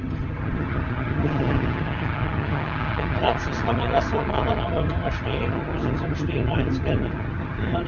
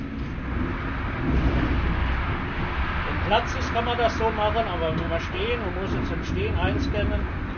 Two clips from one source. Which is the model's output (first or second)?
first